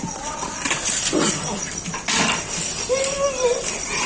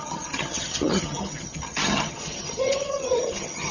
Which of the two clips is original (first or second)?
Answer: first